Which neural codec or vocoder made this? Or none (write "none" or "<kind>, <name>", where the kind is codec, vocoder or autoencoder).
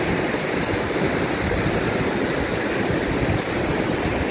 none